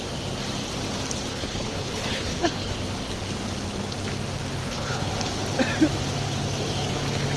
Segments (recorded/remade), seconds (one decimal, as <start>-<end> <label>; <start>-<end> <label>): 0.0-1.3 recorded; 1.3-2.7 remade; 2.7-4.6 recorded; 4.6-5.1 remade; 5.1-7.4 recorded